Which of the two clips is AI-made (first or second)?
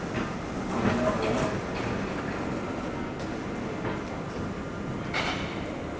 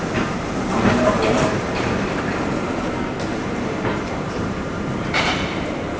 second